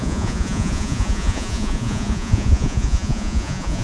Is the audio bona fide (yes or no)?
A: no